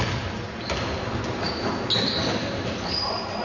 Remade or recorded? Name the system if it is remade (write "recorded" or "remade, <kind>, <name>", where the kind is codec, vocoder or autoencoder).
recorded